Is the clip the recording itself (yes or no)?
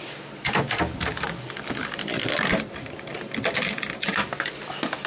yes